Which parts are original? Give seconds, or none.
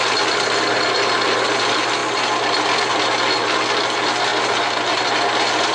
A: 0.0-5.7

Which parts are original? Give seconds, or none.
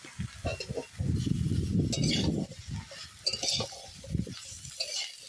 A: 0.0-5.3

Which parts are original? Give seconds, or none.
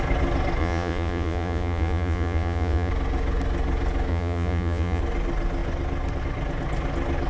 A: 0.0-0.6; 2.9-4.1; 5.0-7.3